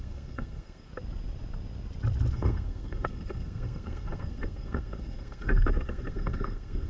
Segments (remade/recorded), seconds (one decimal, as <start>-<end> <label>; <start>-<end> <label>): 0.0-0.9 remade; 0.9-2.3 recorded; 2.3-6.9 remade